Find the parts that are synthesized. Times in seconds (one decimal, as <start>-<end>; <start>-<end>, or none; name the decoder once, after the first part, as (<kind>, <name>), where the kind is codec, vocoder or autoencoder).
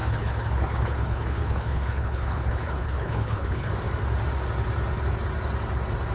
0.0-3.7 (codec, HILCodec)